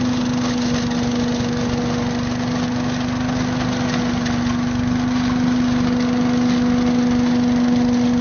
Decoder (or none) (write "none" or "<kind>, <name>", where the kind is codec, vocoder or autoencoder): none